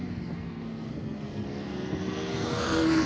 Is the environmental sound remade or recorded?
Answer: remade